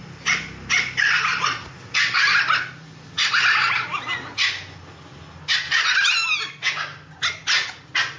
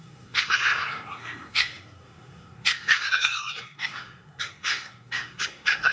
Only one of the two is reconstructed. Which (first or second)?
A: second